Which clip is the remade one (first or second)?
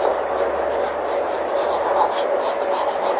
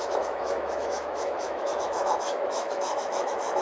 second